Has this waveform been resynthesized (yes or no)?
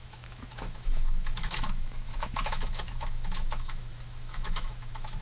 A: yes